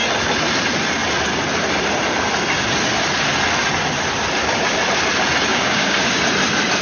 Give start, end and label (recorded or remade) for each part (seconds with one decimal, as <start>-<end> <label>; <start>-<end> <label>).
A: 0.0-5.5 recorded; 5.5-6.2 remade; 6.2-6.8 recorded

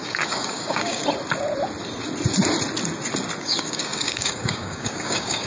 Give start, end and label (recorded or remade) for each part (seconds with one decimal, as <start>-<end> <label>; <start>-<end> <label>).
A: 0.0-1.0 remade; 1.0-3.4 recorded; 3.4-5.5 remade

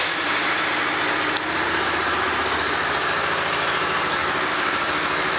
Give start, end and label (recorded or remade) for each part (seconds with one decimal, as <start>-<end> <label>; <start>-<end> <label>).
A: 0.0-4.2 recorded; 4.2-4.9 remade; 4.9-5.4 recorded

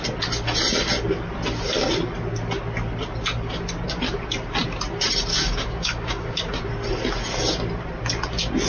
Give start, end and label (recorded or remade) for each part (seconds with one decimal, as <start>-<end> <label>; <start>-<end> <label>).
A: 0.0-5.3 recorded; 5.3-6.5 remade; 6.5-8.7 recorded